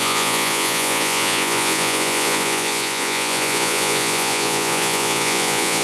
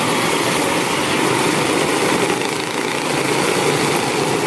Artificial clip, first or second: first